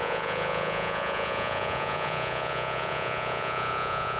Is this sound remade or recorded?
remade